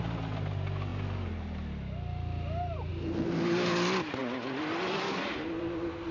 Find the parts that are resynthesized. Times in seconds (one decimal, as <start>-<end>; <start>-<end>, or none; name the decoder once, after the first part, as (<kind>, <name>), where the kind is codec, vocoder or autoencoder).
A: none